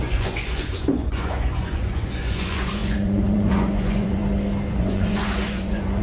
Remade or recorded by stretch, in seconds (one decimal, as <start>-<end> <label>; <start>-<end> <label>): 0.0-4.2 remade; 4.2-4.7 recorded; 4.7-6.0 remade